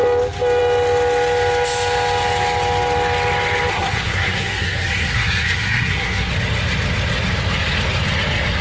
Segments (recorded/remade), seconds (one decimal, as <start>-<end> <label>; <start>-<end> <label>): 0.0-3.7 recorded; 3.7-6.3 remade; 6.3-8.6 recorded